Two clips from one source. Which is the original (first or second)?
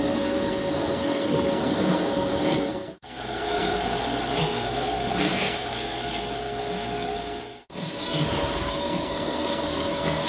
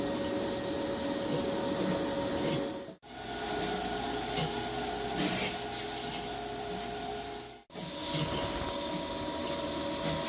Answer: second